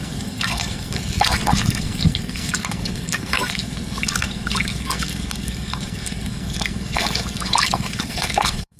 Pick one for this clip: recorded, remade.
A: remade